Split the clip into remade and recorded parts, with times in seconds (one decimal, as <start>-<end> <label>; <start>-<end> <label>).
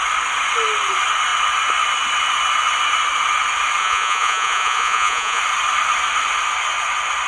0.0-3.8 recorded; 3.8-5.4 remade; 5.4-7.3 recorded